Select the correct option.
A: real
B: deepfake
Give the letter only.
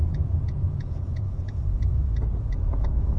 B